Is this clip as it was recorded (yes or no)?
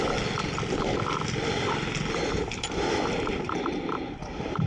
yes